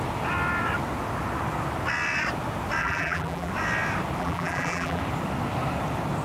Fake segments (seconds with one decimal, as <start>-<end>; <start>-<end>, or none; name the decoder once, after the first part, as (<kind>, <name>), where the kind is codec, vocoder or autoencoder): 2.8-3.5 (vocoder, BigVGAN v2); 4.2-5.0